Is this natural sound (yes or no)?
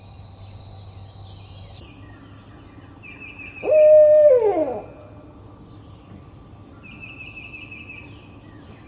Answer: yes